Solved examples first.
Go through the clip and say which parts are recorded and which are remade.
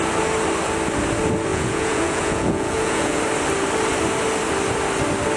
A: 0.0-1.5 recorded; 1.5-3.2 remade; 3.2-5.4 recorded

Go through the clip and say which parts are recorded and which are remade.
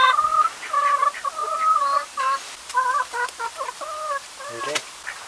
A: 0.0-1.4 recorded; 1.4-4.6 remade; 4.6-5.3 recorded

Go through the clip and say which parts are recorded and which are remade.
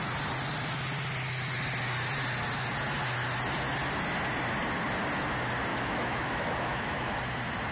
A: 0.0-5.7 recorded; 5.7-7.2 remade; 7.2-7.7 recorded